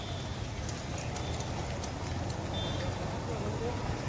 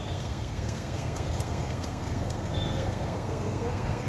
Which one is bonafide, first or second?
first